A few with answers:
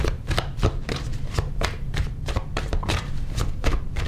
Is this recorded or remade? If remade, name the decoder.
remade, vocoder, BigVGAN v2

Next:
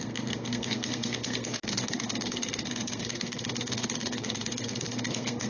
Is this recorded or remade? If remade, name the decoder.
remade, codec, SNAC